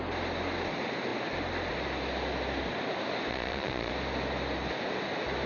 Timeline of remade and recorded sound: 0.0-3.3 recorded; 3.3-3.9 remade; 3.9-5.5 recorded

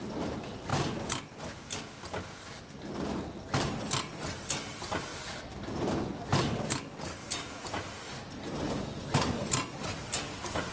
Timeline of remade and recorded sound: 0.0-10.7 recorded

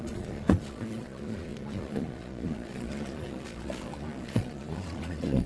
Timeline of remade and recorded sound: 0.0-5.5 remade